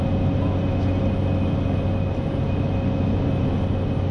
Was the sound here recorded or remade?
recorded